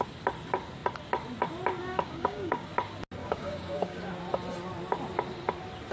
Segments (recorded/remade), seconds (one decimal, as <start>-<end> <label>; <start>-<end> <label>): 0.0-1.9 recorded; 1.9-2.7 remade; 2.7-3.2 recorded; 3.2-4.1 remade; 4.1-5.9 recorded